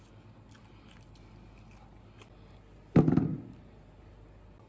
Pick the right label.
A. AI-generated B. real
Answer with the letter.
B